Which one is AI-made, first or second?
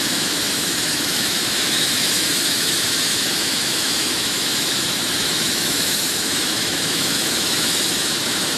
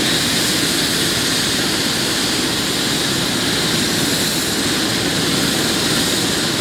first